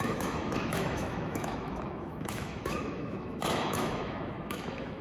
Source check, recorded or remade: remade